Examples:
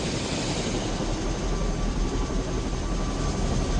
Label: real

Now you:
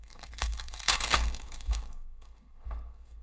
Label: fake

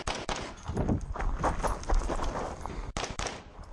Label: real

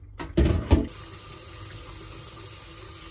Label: real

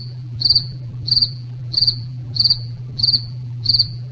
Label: fake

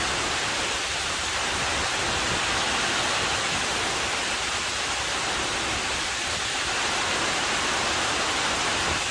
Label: real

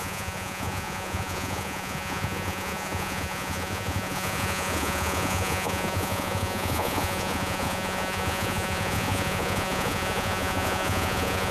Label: fake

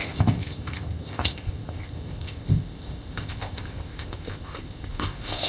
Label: fake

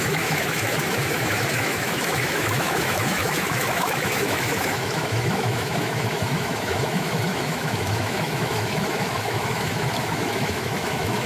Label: fake